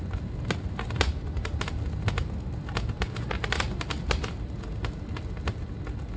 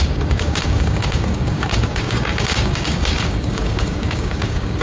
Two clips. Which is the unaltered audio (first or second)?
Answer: first